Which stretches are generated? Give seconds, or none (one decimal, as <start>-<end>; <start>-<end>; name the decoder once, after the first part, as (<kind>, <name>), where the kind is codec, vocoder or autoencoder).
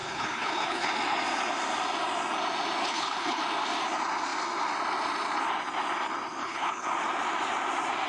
0.0-0.9 (codec, HILCodec); 2.8-3.4; 6.4-6.9